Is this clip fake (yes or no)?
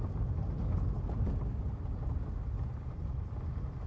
no